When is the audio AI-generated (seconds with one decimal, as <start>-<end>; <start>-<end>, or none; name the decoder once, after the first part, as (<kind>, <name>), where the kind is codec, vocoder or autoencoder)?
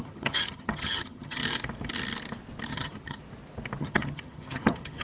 0.0-1.4 (vocoder, HiFi-GAN); 2.7-3.2; 3.8-5.0